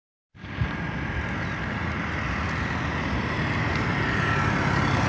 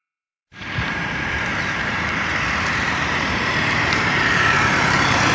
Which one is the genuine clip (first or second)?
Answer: first